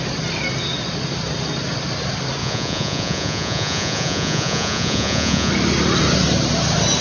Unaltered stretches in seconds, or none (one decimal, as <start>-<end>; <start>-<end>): 0.0-2.4; 5.5-7.0